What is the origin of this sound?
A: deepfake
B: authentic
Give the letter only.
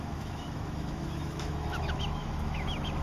A